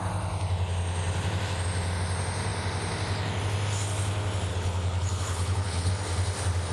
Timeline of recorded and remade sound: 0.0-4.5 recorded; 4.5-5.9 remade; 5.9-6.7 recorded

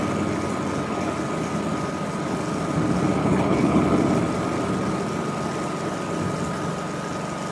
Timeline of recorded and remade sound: 0.0-3.2 recorded; 3.2-3.8 remade; 3.8-7.5 recorded

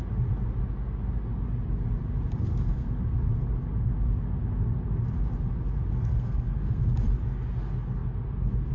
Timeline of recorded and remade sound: 0.0-2.5 recorded; 2.5-3.0 remade; 3.0-5.9 recorded; 5.9-6.8 remade; 6.8-8.7 recorded

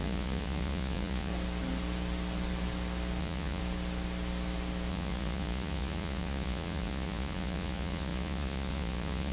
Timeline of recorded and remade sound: 0.0-1.3 remade; 1.3-3.2 recorded; 3.2-3.6 remade; 3.6-4.9 recorded; 4.9-9.3 remade